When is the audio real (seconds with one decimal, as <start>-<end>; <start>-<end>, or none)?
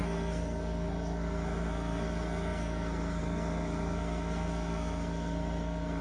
none